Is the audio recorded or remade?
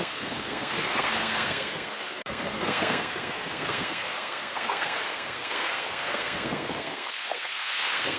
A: remade